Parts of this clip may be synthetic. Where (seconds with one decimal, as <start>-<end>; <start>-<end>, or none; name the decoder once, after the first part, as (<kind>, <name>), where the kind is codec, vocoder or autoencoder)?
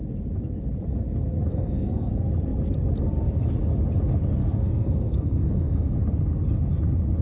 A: 1.5-2.1 (codec, SNAC); 4.4-5.9